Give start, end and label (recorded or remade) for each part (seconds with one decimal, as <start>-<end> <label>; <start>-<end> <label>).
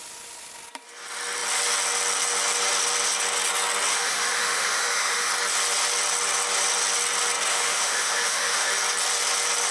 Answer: 0.0-3.9 recorded; 3.9-5.3 remade; 5.3-7.5 recorded; 7.5-8.7 remade; 8.7-9.7 recorded